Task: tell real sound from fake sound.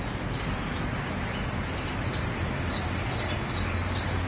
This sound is real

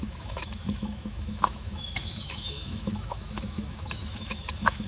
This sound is fake